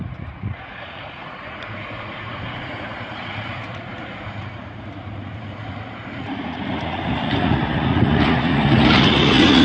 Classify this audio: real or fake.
fake